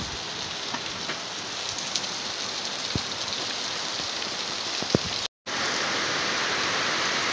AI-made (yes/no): no